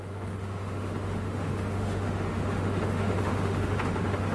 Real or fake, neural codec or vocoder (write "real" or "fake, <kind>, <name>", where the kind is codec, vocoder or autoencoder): fake, autoencoder, DAC-VAE